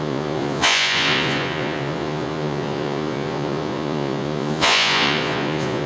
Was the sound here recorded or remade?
remade